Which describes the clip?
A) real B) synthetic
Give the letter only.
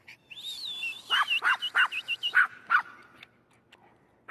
A